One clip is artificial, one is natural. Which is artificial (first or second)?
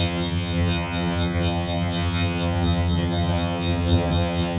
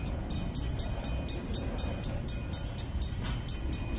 first